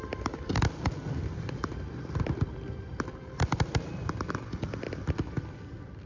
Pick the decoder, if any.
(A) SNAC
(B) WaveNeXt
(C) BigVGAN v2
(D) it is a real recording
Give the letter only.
C